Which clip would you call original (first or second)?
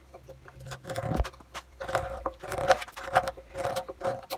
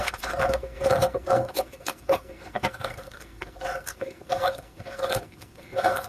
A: first